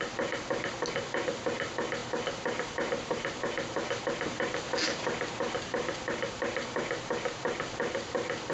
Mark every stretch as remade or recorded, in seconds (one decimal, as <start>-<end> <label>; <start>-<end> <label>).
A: 0.0-8.5 recorded